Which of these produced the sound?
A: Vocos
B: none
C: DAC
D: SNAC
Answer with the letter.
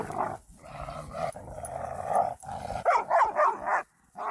B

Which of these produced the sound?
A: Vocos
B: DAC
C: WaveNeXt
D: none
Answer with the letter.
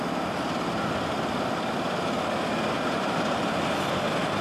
D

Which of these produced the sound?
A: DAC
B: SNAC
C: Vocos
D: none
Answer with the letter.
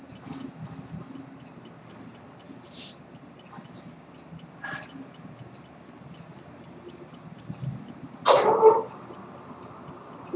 D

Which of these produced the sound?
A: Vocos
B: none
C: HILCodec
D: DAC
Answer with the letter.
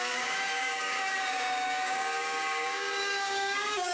D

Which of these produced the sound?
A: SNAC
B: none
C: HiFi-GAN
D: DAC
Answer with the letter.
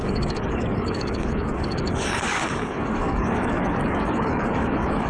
D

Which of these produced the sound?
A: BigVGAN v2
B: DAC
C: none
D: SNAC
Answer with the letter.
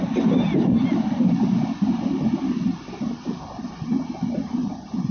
C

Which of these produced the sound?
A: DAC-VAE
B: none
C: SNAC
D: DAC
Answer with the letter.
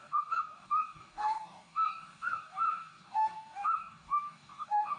D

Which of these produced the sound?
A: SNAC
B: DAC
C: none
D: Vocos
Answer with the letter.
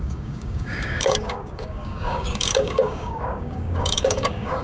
B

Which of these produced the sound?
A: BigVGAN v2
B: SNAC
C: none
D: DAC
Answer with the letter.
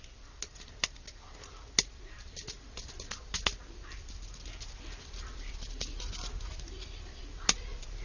C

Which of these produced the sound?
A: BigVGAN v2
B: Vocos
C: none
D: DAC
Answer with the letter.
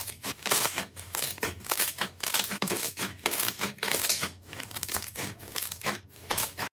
D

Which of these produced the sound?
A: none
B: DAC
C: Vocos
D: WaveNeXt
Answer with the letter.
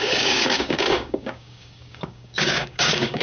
B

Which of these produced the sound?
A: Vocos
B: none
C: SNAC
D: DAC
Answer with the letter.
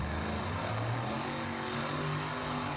D